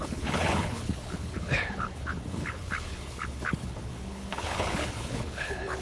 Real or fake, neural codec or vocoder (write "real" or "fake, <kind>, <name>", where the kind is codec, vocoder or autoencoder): fake, codec, HILCodec